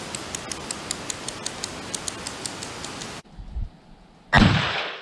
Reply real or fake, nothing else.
real